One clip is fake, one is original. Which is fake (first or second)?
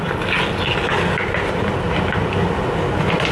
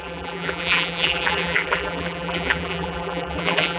second